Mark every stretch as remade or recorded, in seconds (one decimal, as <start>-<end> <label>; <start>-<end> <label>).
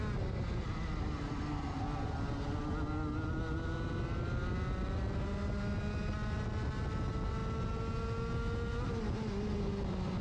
0.0-10.2 recorded